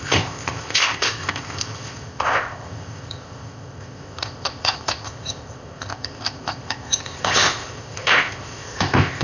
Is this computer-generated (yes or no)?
yes